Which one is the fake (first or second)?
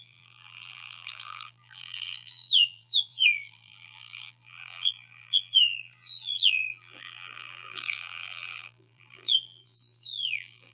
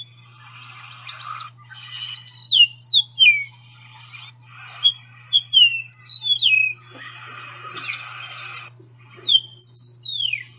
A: first